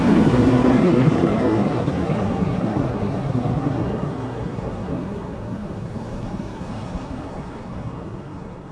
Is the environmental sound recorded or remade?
remade